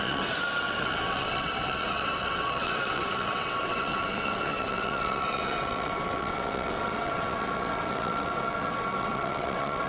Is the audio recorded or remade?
remade